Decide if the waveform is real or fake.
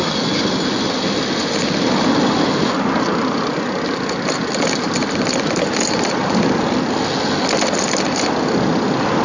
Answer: real